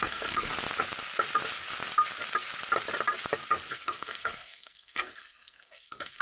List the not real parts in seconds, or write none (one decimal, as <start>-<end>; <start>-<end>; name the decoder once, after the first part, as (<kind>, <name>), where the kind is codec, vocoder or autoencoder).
0.0-0.5 (codec, SNAC); 3.7-6.2